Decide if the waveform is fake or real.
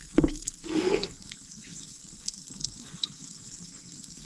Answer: fake